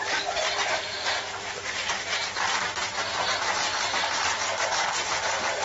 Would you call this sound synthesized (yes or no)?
yes